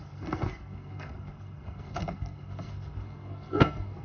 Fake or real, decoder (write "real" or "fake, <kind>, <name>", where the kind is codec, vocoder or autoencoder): fake, codec, SNAC